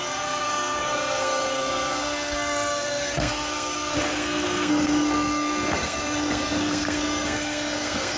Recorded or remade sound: remade